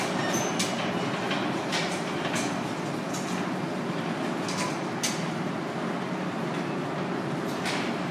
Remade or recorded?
recorded